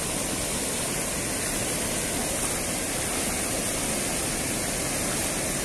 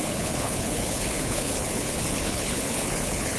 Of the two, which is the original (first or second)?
first